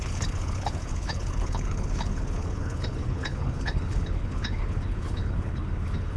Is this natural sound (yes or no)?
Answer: no